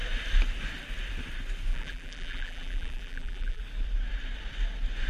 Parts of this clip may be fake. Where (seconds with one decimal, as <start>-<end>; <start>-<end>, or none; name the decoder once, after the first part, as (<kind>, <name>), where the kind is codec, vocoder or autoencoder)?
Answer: 1.7-3.6 (vocoder, BigVGAN v2)